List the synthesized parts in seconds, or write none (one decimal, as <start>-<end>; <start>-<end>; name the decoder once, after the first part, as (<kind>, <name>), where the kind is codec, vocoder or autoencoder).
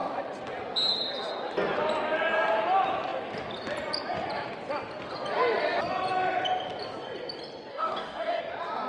7.7-8.4 (codec, DAC)